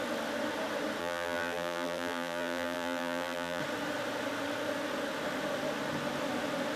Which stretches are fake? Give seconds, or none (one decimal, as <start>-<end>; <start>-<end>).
1.0-3.6